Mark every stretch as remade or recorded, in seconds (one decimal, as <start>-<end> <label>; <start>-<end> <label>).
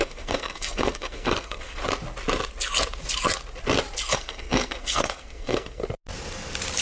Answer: 0.0-1.8 remade; 1.8-4.1 recorded; 4.1-5.8 remade; 5.8-6.8 recorded